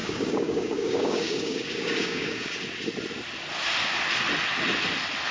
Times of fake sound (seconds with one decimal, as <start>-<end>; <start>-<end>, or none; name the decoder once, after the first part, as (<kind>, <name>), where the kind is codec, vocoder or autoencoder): 0.0-2.6 (codec, DAC)